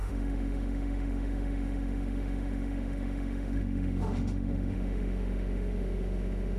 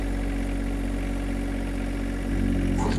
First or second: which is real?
second